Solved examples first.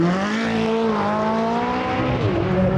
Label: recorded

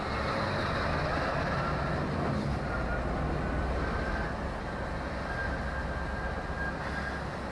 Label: recorded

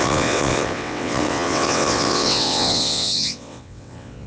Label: remade